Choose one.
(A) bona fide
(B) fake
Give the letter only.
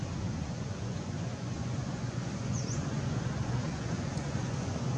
B